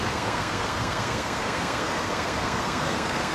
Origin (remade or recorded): remade